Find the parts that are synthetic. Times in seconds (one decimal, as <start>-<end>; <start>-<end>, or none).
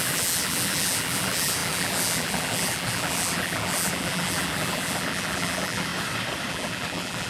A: 0.0-5.9; 6.5-7.3